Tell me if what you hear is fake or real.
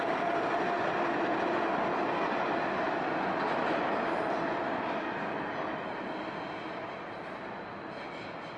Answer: real